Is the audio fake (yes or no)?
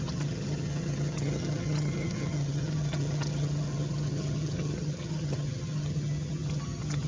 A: yes